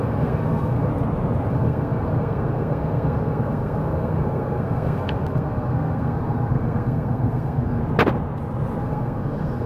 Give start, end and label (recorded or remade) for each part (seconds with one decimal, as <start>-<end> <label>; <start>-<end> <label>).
0.0-0.9 remade; 0.9-1.5 recorded; 1.5-7.8 remade; 7.8-8.8 recorded; 8.8-9.7 remade